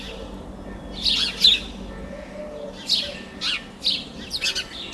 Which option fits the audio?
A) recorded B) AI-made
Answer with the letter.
A